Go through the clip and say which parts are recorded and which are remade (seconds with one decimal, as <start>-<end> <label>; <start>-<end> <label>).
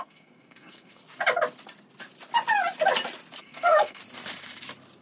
0.0-1.0 remade; 1.0-3.4 recorded; 3.4-4.0 remade; 4.0-5.0 recorded